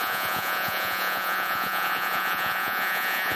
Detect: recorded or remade remade